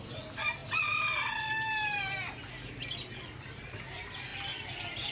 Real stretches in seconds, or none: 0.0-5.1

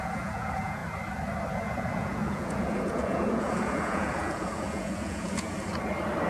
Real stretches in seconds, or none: 0.8-1.5; 5.5-6.3

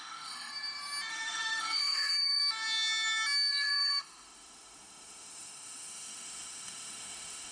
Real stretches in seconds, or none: 0.5-1.1; 2.4-3.5

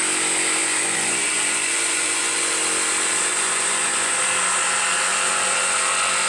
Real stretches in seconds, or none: 0.0-0.6; 2.5-3.3; 4.2-6.3

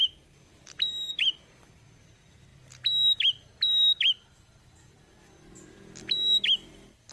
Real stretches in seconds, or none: 0.0-7.1